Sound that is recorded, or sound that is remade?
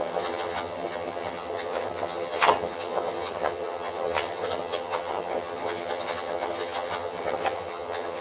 remade